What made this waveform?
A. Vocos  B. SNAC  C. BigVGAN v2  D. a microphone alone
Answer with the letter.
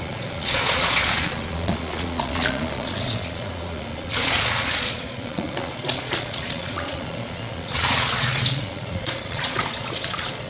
A